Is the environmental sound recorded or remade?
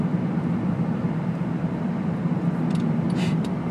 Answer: recorded